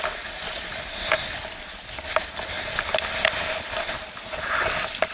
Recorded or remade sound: recorded